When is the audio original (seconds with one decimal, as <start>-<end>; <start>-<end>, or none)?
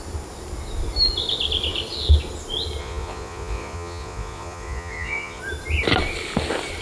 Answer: 0.0-2.8; 5.4-6.8